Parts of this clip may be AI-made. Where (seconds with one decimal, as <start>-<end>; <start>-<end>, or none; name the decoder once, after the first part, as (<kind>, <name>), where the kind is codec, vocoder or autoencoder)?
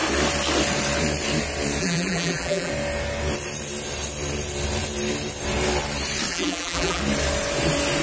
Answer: 1.8-2.7 (vocoder, BigVGAN v2); 6.3-7.0